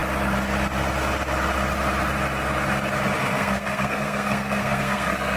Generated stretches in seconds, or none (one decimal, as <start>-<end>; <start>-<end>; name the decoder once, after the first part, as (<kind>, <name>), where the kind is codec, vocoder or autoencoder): 3.2-5.4 (codec, SNAC)